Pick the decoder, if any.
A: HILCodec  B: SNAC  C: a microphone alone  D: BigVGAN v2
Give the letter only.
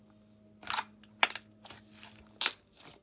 C